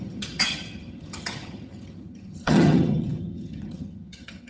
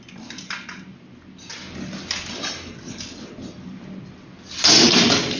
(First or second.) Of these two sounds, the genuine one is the second